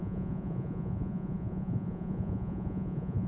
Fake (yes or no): yes